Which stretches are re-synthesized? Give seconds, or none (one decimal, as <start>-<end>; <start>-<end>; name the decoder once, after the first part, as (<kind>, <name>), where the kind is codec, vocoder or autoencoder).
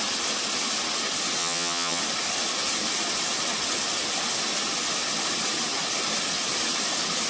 1.4-2.0 (vocoder, HiFi-GAN)